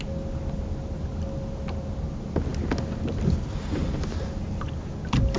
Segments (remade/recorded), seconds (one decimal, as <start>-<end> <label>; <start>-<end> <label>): 0.0-5.4 recorded